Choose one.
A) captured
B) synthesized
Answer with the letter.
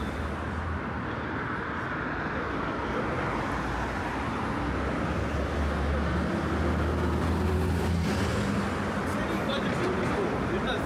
A